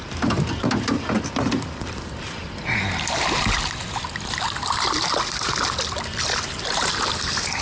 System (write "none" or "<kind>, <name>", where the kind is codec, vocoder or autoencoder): none